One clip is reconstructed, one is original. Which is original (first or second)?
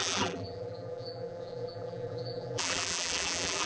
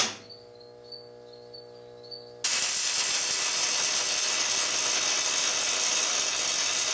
second